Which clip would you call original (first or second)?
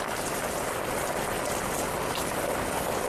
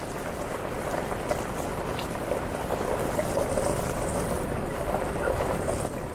first